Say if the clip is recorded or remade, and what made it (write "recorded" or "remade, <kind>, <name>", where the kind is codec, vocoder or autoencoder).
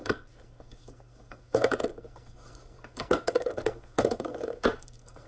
remade, codec, SNAC